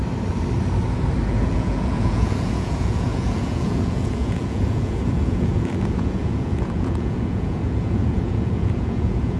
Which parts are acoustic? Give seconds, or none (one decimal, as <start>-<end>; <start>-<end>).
0.0-1.3